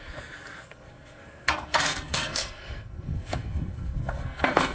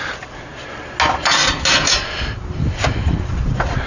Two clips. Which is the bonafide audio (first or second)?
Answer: second